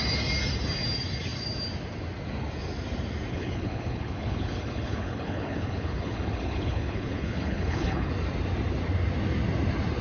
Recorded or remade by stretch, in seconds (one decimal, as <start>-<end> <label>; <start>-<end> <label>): 0.0-3.3 recorded; 3.3-8.1 remade; 8.1-10.0 recorded